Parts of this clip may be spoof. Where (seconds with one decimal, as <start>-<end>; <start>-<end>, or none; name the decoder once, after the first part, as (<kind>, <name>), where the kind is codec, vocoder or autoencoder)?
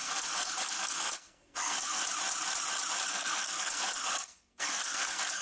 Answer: 0.0-2.0 (codec, SNAC); 3.1-5.4